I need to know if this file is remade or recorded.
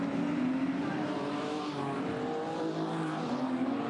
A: recorded